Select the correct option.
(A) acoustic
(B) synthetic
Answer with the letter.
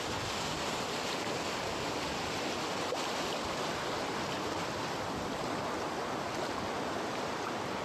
A